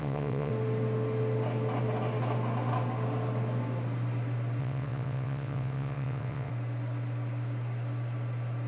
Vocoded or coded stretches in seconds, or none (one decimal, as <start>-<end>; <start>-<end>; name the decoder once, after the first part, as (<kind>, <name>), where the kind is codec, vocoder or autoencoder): 0.0-0.5 (vocoder, WaveNeXt); 4.6-6.5